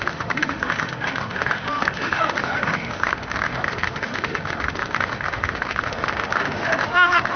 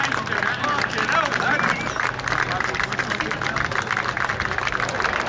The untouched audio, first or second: second